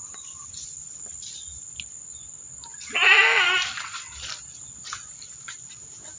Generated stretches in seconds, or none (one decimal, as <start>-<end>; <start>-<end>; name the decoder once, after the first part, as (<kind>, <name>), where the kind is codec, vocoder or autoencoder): 0.0-0.5 (vocoder, BigVGAN v2)